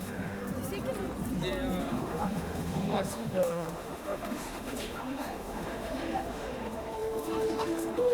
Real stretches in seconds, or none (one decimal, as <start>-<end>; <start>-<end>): 0.4-1.8